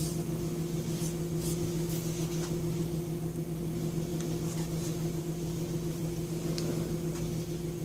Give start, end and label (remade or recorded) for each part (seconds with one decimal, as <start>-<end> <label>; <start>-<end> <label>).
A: 0.0-4.1 recorded; 4.1-5.2 remade; 5.2-6.0 recorded; 6.0-7.8 remade